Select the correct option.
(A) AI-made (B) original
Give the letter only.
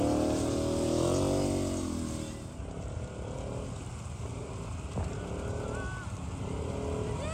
B